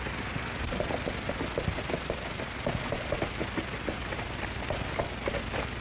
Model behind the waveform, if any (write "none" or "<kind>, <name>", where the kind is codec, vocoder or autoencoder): none